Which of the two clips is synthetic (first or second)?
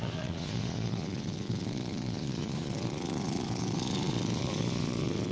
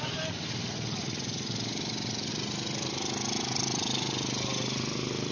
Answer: first